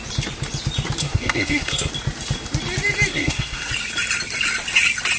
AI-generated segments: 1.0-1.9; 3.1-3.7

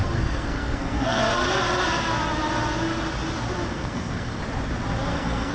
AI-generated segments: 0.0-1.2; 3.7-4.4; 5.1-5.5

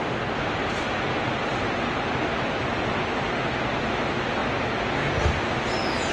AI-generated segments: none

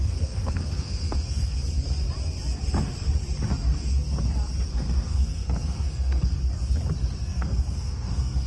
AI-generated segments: 0.0-1.6; 4.7-6.4; 7.2-8.5